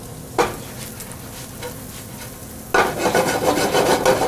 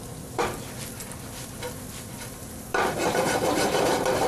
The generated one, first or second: second